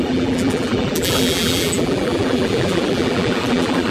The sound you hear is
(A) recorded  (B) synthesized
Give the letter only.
B